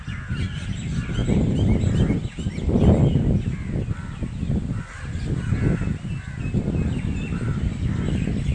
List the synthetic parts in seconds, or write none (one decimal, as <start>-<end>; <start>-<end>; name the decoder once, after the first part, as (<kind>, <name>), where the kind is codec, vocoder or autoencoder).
none

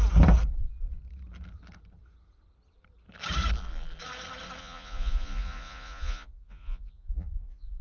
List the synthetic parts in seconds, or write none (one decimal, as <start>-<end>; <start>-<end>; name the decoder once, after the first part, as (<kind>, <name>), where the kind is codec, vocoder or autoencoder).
4.6-7.8 (vocoder, Vocos)

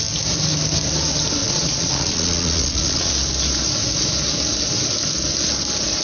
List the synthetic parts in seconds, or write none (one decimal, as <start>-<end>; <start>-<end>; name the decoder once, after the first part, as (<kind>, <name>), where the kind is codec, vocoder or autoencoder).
1.4-3.1 (vocoder, Vocos)

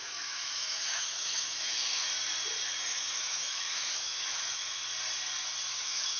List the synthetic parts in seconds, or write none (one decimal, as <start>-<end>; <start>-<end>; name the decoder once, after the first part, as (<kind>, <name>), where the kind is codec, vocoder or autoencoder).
0.0-2.1 (autoencoder, DAC-VAE); 2.9-4.8; 5.7-6.2

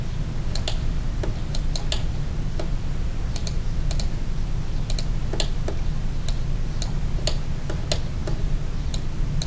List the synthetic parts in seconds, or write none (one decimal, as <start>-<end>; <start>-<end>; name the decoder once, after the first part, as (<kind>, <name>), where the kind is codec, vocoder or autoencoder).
none

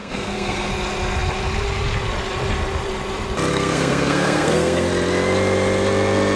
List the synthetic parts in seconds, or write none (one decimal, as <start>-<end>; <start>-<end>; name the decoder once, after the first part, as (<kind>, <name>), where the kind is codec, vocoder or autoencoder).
0.0-0.7 (codec, SNAC); 3.5-4.9